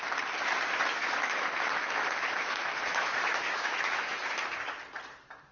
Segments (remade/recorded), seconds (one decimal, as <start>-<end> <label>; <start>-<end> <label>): 0.0-1.0 recorded; 1.0-4.3 remade; 4.3-5.5 recorded